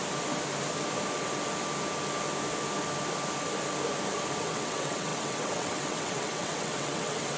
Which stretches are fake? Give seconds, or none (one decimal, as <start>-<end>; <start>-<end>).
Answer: 4.4-7.4